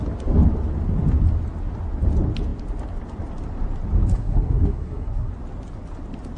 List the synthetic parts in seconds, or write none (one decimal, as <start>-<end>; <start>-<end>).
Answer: 4.1-5.3